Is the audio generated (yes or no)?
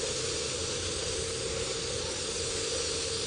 no